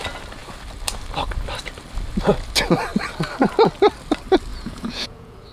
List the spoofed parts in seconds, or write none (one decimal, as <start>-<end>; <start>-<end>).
4.5-5.5